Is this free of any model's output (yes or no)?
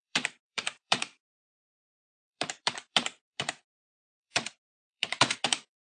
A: no